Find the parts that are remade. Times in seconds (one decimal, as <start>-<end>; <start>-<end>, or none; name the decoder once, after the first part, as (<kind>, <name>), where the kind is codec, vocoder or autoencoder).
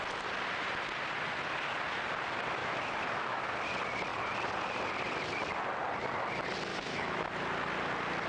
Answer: 2.6-3.4 (autoencoder, DAC-VAE); 6.7-7.4